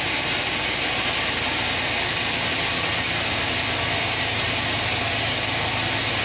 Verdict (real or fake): real